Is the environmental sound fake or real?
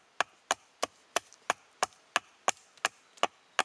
real